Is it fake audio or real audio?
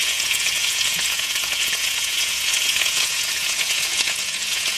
fake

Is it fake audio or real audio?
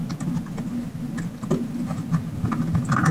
real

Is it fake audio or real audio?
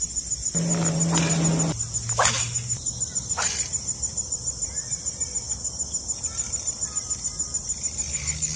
real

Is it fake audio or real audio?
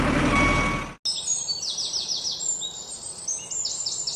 real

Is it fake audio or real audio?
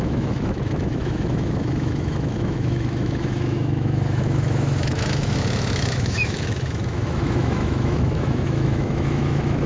fake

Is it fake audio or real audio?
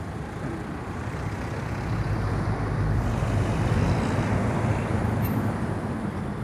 fake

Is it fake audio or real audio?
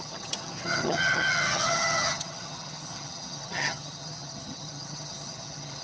fake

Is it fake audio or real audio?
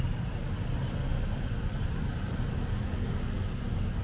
real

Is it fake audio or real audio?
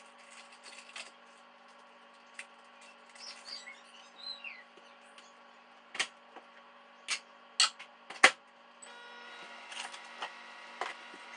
real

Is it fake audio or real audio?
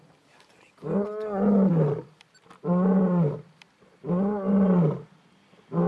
real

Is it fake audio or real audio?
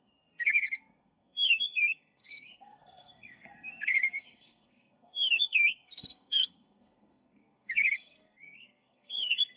fake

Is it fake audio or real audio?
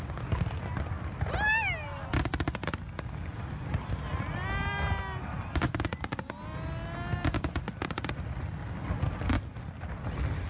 real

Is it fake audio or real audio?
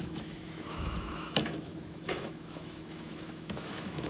fake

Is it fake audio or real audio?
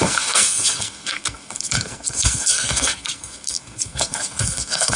fake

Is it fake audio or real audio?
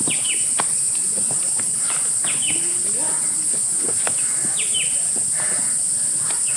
real